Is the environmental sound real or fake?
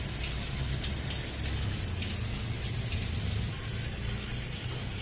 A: real